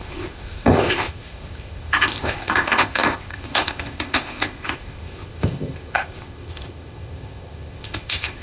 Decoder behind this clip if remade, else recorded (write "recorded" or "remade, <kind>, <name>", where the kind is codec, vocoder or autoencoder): remade, codec, ZipCodec